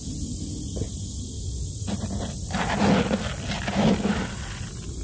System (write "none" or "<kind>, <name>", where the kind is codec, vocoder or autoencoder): none